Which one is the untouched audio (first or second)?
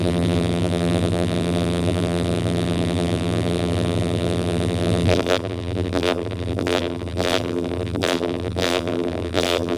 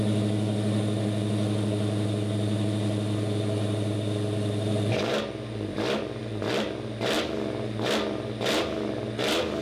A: second